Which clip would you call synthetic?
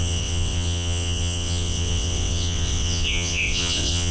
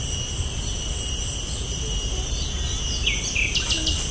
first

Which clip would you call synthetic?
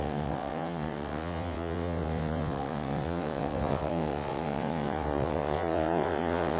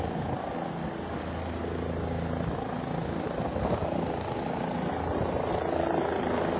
first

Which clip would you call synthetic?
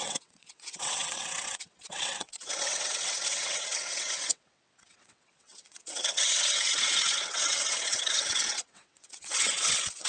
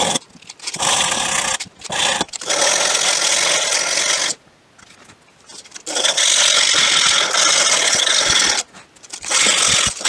first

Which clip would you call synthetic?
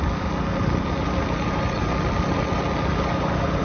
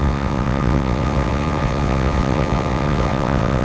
second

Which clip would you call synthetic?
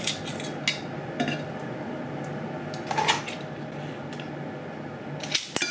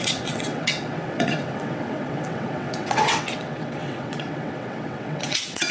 second